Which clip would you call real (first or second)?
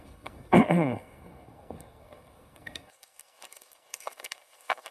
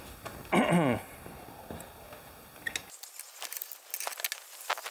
second